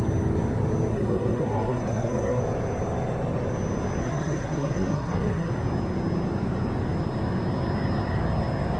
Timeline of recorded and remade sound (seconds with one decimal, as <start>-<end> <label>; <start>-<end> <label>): 0.0-0.9 recorded; 0.9-2.4 remade; 2.4-4.0 recorded; 4.0-5.5 remade; 5.5-8.8 recorded